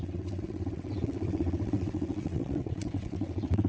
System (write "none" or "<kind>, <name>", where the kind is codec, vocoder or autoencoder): vocoder, WaveNeXt